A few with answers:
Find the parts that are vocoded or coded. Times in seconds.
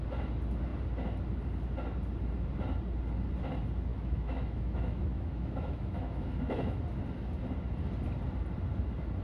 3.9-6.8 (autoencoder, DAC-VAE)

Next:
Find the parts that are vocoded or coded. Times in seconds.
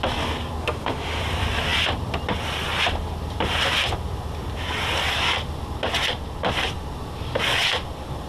0.6-1.2 (autoencoder, DAC-VAE)